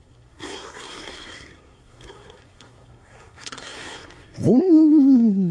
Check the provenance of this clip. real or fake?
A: fake